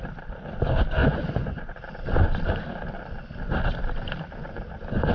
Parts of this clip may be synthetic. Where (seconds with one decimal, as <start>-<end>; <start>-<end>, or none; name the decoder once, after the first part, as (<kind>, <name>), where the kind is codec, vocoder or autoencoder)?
1.0-1.6 (vocoder, Vocos)